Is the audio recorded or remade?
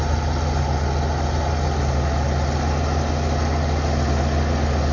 recorded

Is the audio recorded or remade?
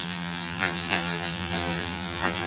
remade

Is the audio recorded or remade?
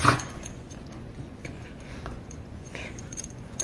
remade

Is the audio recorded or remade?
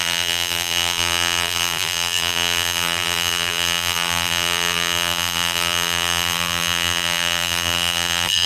remade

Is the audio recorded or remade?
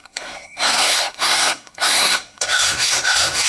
remade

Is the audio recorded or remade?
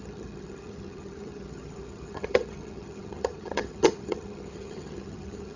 remade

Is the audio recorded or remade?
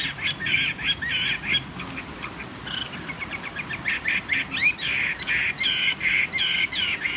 recorded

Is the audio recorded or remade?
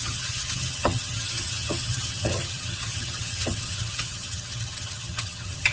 remade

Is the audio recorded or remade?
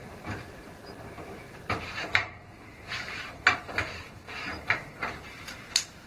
remade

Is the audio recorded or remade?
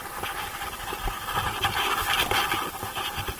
remade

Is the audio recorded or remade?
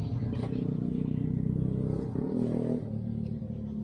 recorded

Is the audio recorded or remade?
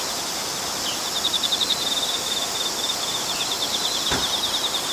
recorded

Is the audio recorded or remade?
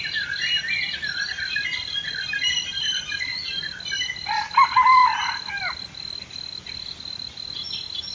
recorded